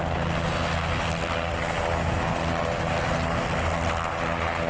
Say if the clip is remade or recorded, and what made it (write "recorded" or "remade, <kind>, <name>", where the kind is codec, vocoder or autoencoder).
recorded